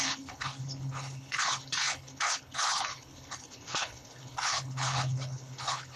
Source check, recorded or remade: remade